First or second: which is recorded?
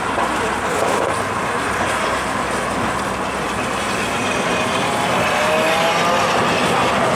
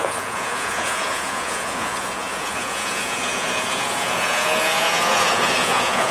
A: first